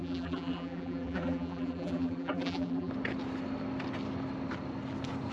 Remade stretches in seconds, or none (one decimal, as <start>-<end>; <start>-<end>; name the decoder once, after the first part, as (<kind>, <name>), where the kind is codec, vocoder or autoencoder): 0.0-2.9 (vocoder, BigVGAN v2)